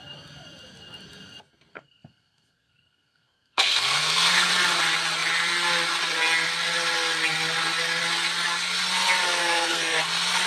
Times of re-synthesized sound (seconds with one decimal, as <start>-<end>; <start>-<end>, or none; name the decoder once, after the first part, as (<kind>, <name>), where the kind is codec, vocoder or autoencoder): 1.7-4.5 (codec, SNAC); 9.4-10.0